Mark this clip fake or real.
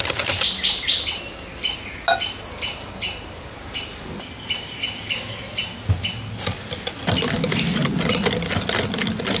real